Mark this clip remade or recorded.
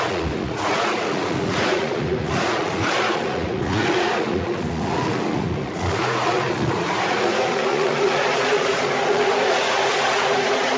remade